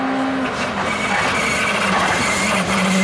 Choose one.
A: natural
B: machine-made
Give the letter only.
A